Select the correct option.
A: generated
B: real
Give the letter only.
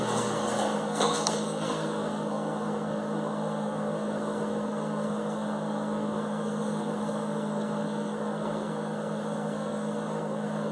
A